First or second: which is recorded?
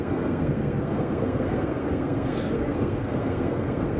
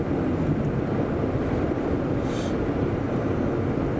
second